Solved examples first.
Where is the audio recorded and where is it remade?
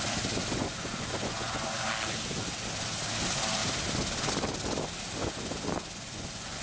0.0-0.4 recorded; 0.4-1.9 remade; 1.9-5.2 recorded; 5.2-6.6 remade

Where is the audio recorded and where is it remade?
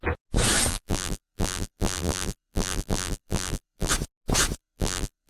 0.0-0.7 recorded; 0.7-3.9 remade; 3.9-4.6 recorded; 4.6-5.3 remade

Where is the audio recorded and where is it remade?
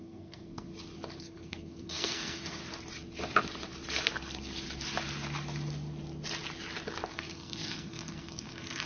0.0-0.7 remade; 0.7-1.2 recorded; 1.2-2.6 remade; 2.6-7.1 recorded; 7.1-8.9 remade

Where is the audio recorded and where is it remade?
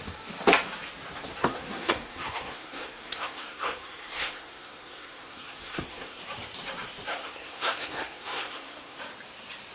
0.0-1.4 recorded; 1.4-6.2 remade; 6.2-7.1 recorded; 7.1-9.0 remade; 9.0-9.7 recorded